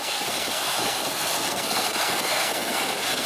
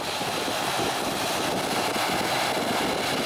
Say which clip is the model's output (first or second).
first